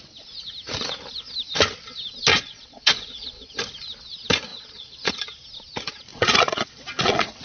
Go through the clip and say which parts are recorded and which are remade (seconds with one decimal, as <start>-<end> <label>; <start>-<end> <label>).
0.0-2.3 recorded; 2.3-3.5 remade; 3.5-4.5 recorded; 4.5-5.1 remade; 5.1-6.1 recorded; 6.1-7.4 remade